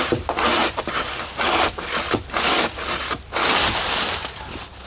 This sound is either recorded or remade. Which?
recorded